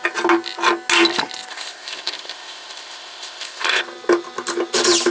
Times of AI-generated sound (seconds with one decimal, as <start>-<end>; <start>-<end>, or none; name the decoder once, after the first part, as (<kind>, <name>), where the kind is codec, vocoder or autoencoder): 1.5-3.8 (codec, ZipCodec)